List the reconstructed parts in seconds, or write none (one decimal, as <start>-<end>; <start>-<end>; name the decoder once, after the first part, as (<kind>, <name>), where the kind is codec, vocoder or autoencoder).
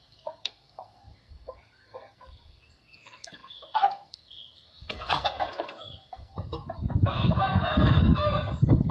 0.0-8.9 (codec, SNAC)